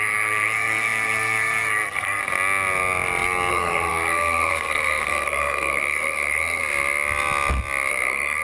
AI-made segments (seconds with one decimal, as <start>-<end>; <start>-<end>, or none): 0.0-2.2; 3.5-6.6; 7.9-8.4